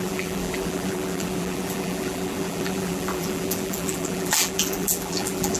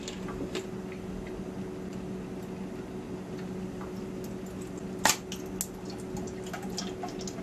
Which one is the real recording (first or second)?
second